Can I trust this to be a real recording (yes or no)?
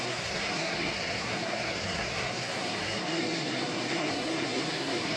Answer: no